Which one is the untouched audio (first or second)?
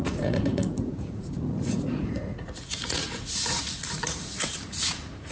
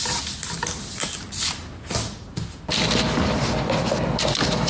second